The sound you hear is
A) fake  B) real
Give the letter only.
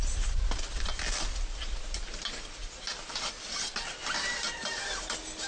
B